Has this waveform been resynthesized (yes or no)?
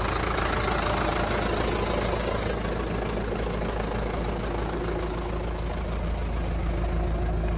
no